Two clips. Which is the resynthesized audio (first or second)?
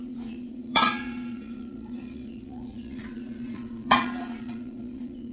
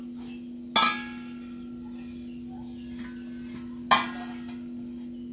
first